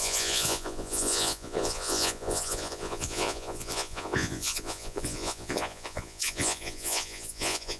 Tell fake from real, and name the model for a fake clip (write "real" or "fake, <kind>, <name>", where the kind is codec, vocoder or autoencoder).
fake, vocoder, Vocos